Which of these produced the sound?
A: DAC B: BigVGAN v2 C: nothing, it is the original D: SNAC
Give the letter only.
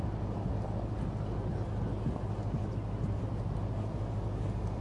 C